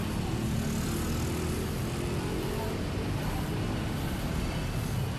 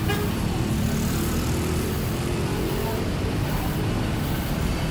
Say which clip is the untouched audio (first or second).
first